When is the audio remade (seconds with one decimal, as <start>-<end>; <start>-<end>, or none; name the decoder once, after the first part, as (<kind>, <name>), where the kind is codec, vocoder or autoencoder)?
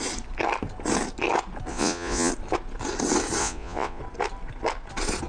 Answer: 1.7-2.3 (vocoder, Vocos); 3.4-4.0